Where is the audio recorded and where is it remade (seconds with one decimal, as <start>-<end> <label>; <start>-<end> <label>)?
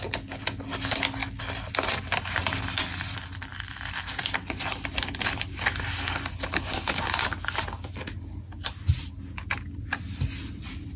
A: 0.0-11.0 recorded